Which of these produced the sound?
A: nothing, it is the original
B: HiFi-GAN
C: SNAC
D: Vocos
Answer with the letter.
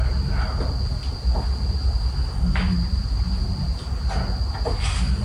A